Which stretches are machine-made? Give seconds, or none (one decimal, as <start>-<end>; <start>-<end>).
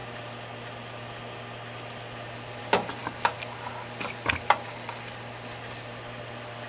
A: none